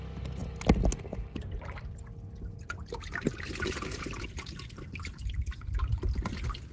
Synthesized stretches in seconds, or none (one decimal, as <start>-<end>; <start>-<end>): none